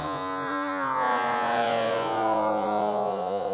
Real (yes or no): no